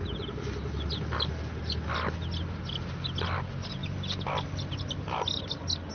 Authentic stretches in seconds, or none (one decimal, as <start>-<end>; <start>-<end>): 0.0-5.9